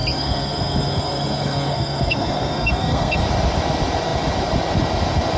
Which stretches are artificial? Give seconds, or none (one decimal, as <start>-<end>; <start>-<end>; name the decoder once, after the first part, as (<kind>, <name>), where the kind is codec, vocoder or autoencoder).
0.0-3.2 (codec, SNAC)